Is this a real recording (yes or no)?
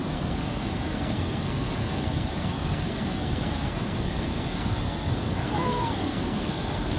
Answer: no